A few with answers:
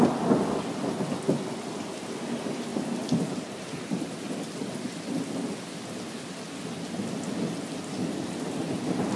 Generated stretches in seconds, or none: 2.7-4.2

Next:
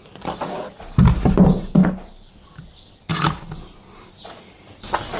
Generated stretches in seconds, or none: none